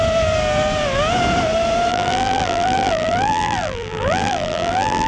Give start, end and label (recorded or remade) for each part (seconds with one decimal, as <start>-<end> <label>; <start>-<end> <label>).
0.0-1.9 recorded; 1.9-5.1 remade